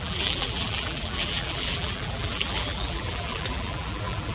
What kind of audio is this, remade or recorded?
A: remade